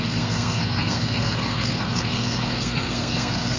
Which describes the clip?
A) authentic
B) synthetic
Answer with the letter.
B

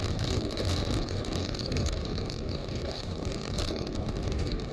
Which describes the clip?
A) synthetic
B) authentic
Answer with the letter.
A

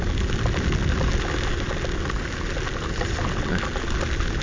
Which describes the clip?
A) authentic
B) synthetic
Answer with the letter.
A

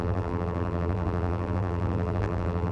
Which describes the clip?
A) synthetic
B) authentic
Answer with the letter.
A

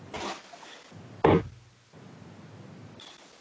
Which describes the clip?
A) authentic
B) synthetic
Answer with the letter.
A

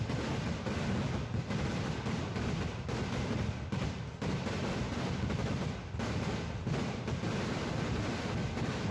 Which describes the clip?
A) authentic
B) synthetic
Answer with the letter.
A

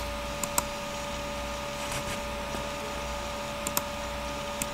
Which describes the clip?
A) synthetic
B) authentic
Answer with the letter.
B